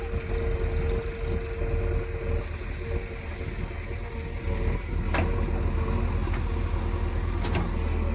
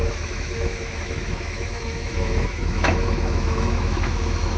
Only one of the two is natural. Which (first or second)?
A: first